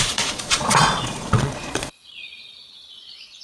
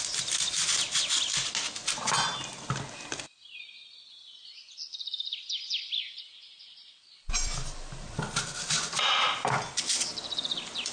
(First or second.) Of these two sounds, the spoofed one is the first